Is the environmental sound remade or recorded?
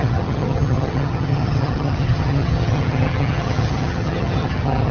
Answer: remade